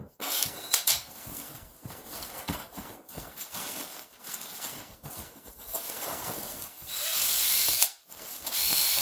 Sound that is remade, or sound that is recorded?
remade